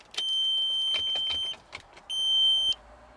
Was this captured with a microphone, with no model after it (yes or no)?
yes